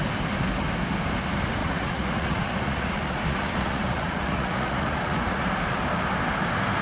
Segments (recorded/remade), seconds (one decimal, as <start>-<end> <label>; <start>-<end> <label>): 0.0-1.6 recorded; 1.6-5.5 remade; 5.5-6.8 recorded